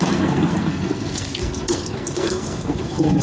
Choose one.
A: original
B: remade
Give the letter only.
B